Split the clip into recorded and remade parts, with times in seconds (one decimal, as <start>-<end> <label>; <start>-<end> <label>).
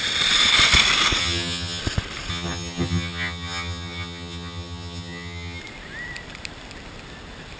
0.0-1.2 recorded; 1.2-1.8 remade; 1.8-2.3 recorded; 2.3-5.6 remade; 5.6-7.6 recorded